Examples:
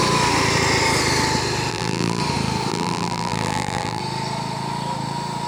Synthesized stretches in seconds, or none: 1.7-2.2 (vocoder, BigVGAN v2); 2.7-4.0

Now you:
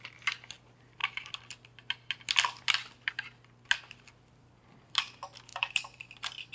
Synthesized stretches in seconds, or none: 5.5-6.5 (vocoder, BigVGAN v2)

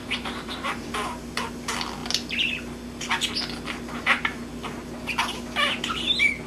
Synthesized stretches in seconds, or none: 0.0-0.9 (vocoder, BigVGAN v2)

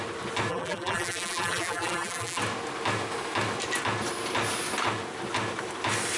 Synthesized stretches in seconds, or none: 0.5-2.4 (vocoder, BigVGAN v2)

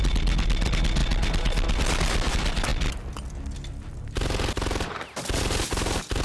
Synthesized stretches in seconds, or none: none

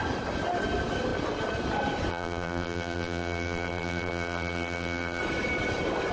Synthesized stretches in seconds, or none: 2.1-5.2 (vocoder, BigVGAN v2)

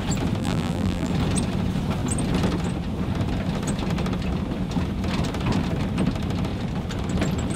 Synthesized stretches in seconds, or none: 0.4-1.1 (vocoder, BigVGAN v2)